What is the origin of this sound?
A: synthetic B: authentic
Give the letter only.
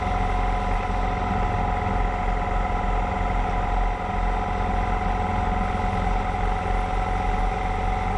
B